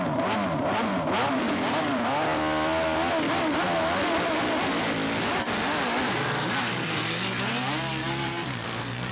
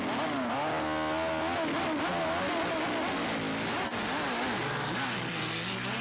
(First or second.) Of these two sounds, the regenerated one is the first